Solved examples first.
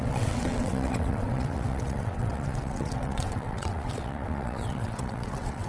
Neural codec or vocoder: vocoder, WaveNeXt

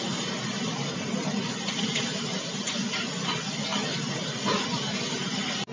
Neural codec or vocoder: none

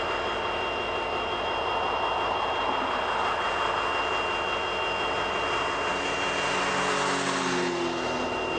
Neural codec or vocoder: none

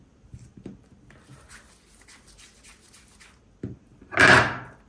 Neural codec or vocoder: none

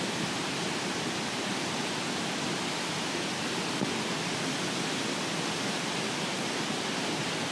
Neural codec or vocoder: none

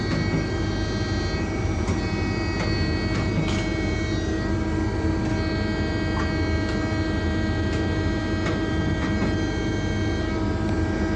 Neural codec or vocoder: none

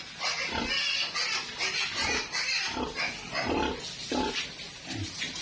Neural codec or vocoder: none